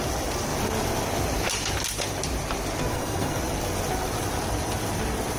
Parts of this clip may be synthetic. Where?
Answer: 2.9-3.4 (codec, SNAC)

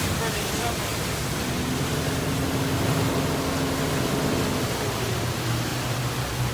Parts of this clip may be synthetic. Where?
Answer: none

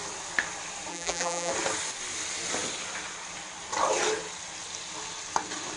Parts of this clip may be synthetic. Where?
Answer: 0.9-1.5 (vocoder, BigVGAN v2)

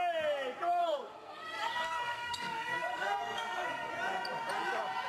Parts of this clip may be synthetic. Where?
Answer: 0.8-3.9 (codec, SNAC)

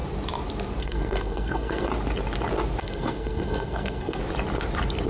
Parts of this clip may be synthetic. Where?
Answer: 0.8-1.9 (codec, SNAC); 2.8-4.2

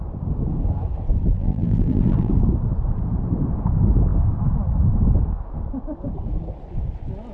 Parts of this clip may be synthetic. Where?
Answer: 1.3-2.3 (vocoder, BigVGAN v2)